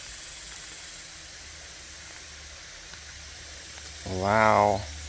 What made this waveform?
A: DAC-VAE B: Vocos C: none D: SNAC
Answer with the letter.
C